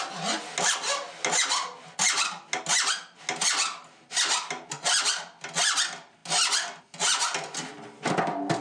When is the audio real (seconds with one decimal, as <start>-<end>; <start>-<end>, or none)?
0.0-8.6